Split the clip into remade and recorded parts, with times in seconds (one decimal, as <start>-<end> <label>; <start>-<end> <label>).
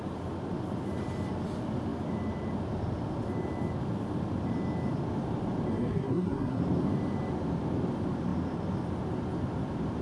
0.0-5.7 recorded; 5.7-6.6 remade; 6.6-10.0 recorded